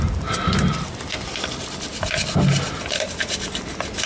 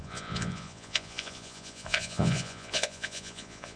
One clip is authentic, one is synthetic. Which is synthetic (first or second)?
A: second